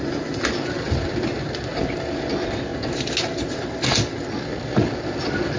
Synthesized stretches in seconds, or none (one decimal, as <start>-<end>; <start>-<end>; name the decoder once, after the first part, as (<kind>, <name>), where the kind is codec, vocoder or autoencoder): 0.0-1.7 (vocoder, BigVGAN v2); 2.2-2.7; 3.9-5.6